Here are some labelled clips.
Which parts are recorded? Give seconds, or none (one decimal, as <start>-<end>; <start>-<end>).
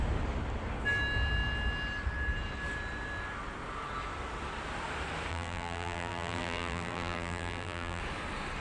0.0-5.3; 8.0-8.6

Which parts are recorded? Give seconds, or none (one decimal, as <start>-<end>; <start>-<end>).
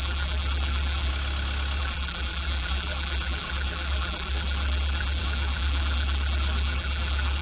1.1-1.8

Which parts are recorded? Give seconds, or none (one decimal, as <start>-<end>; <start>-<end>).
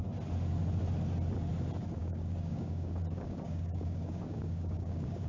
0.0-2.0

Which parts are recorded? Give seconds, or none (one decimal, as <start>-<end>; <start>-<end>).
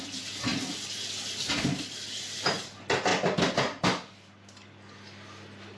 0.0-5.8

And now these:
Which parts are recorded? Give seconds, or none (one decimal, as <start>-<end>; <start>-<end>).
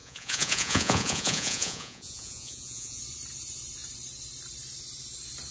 3.0-5.5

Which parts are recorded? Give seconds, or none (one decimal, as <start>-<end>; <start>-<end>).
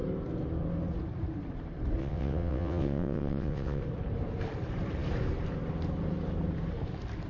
0.0-2.0; 3.8-7.3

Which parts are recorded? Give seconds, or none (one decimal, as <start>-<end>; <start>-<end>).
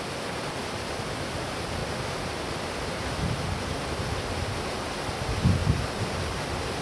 0.0-6.8